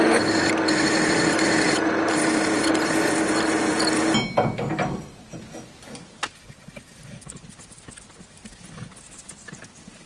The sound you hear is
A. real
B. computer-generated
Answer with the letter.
A